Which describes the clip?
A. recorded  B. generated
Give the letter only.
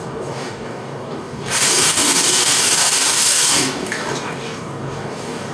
B